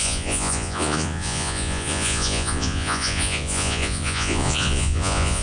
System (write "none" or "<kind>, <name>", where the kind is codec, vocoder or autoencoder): vocoder, Vocos